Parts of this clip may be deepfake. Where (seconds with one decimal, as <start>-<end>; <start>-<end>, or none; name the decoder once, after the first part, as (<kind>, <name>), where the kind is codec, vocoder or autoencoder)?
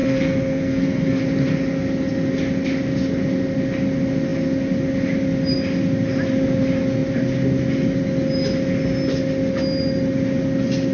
0.0-1.2 (codec, SNAC)